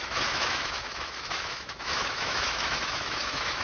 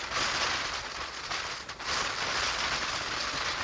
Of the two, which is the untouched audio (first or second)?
second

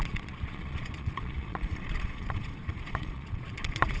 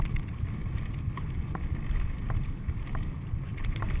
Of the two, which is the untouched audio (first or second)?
second